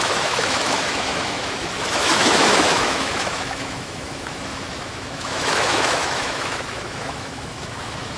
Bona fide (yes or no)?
no